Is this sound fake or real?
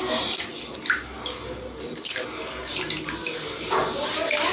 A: real